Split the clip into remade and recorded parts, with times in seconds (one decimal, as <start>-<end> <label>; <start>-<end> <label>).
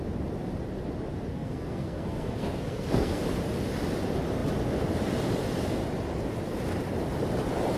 0.0-1.3 recorded; 1.3-3.2 remade; 3.2-7.8 recorded